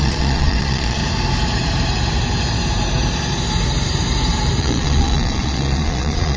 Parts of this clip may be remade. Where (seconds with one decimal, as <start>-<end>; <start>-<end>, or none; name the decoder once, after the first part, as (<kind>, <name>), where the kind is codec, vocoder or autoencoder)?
0.0-1.0 (vocoder, Vocos); 4.6-6.4